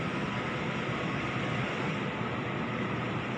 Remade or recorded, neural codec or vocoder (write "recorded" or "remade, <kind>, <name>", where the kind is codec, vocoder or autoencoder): recorded